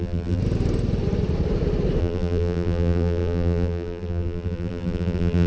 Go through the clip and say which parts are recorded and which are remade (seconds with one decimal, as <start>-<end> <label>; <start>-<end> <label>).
0.0-0.4 remade; 0.4-2.0 recorded; 2.0-5.5 remade